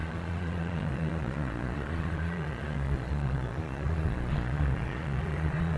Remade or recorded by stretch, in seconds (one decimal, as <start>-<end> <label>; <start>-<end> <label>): 0.0-5.8 remade